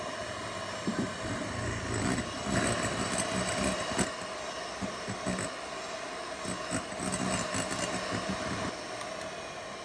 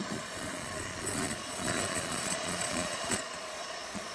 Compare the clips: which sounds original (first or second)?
first